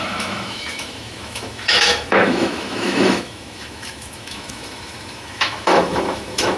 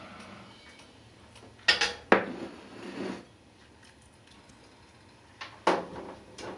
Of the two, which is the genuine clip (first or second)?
second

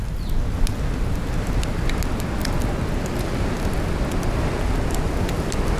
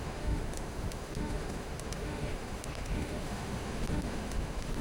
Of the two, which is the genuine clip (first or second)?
first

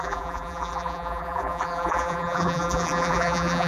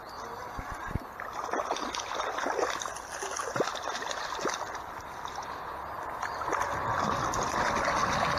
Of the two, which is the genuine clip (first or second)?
second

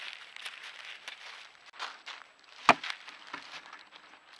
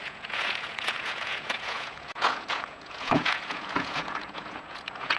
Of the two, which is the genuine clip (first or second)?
first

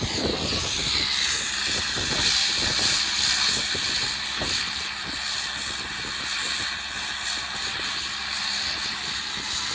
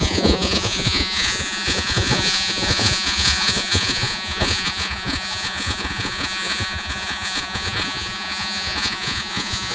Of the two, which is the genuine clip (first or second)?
first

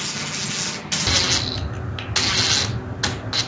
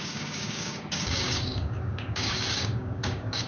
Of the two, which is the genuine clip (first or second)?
first